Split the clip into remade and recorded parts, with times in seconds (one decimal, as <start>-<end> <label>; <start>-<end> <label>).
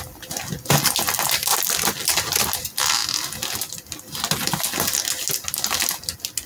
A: 0.0-1.5 recorded; 1.5-2.6 remade; 2.6-6.5 recorded